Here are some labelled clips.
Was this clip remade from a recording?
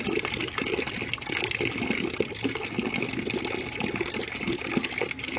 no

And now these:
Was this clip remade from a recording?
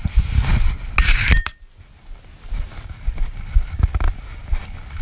no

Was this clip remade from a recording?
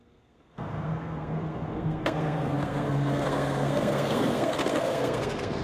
yes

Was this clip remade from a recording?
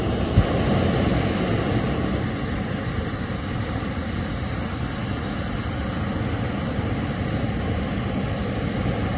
no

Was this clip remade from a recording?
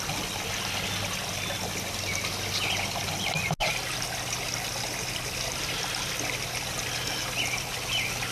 no